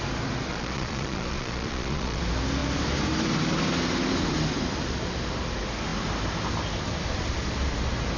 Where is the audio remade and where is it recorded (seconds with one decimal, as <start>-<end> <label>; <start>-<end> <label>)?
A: 0.0-0.5 recorded; 0.5-2.2 remade; 2.2-8.2 recorded